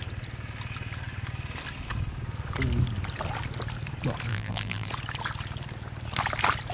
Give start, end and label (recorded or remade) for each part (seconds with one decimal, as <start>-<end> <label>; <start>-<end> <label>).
0.0-4.3 recorded; 4.3-4.9 remade; 4.9-6.7 recorded